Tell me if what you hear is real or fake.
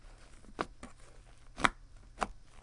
real